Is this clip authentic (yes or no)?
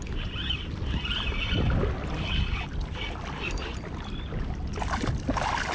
yes